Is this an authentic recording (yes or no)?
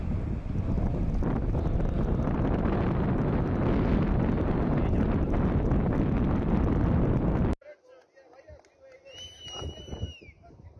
yes